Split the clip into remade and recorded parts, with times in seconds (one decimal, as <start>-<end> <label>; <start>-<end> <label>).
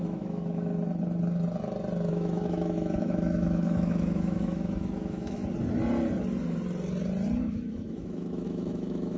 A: 0.0-0.7 remade; 0.7-2.1 recorded; 2.1-5.4 remade; 5.4-7.4 recorded; 7.4-9.2 remade